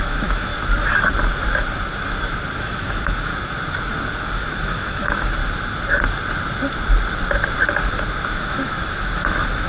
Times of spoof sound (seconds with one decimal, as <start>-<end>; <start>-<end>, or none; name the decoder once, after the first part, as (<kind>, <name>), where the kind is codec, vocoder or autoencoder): 0.0-0.5 (autoencoder, DAC-VAE); 2.6-3.3; 4.4-5.4; 8.3-9.7